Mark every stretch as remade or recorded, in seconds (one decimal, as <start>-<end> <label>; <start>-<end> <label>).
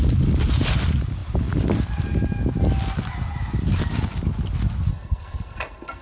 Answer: 0.0-4.9 recorded; 4.9-6.0 remade